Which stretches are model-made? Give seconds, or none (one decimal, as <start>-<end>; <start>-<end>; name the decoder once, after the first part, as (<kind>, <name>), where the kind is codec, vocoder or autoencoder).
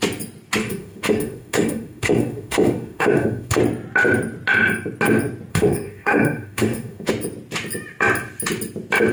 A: 0.6-3.6 (autoencoder, DAC-VAE); 5.5-7.1